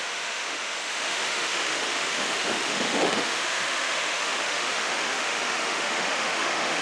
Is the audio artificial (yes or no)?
yes